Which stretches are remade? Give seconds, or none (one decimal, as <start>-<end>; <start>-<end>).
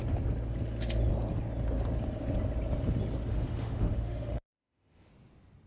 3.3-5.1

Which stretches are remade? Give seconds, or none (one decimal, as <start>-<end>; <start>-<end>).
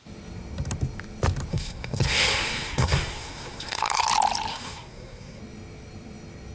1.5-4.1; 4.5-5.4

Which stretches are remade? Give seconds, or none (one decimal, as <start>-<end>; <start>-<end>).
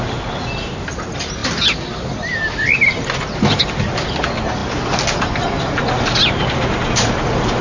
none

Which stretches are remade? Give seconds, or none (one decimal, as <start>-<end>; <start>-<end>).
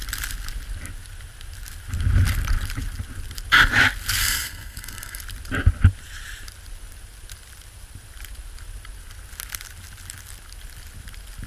4.2-5.2